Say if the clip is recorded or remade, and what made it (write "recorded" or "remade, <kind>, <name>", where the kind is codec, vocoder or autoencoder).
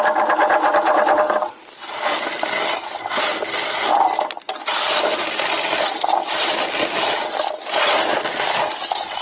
recorded